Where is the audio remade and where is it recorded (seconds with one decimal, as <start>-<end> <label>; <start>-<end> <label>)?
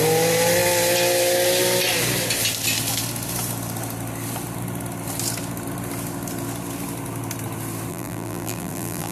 0.0-7.9 recorded; 7.9-9.1 remade